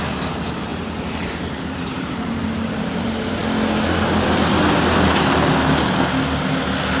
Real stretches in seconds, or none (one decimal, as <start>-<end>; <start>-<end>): 3.4-7.0